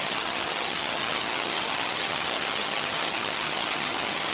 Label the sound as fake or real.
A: fake